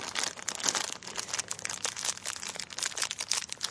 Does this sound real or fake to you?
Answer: real